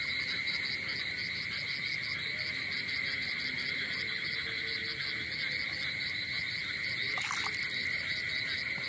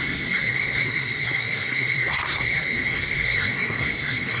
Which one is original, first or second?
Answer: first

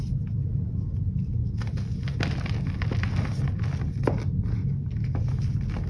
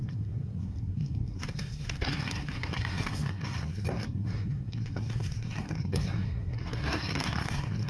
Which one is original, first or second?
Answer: first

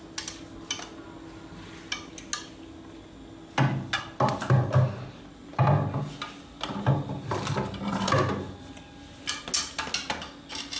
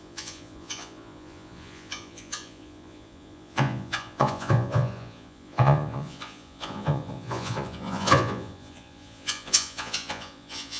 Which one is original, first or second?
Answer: first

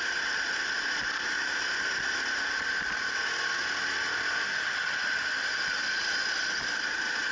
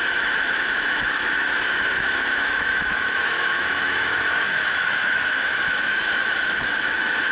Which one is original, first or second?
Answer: first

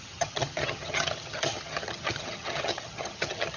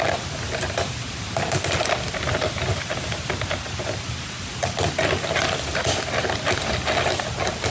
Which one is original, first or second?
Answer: second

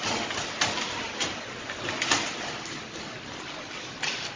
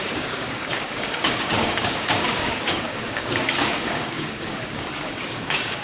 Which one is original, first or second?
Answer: first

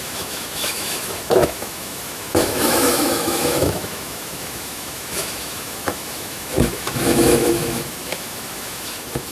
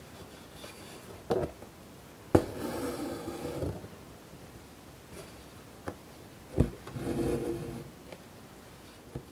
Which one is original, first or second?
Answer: second